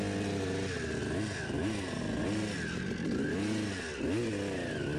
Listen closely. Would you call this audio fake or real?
real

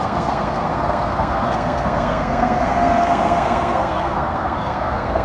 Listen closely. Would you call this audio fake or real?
fake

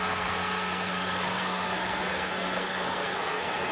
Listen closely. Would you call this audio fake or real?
fake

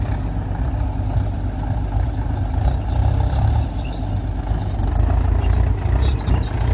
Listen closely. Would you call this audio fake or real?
real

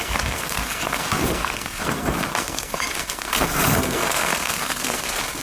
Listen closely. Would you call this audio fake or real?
fake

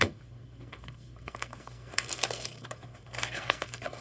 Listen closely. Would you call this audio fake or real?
fake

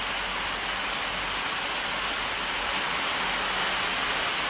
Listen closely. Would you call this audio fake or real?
real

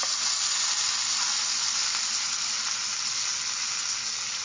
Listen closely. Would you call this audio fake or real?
real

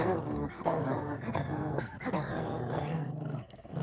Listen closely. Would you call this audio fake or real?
fake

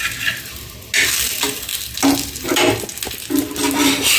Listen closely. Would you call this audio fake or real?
real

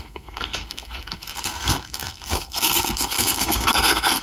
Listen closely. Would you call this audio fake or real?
fake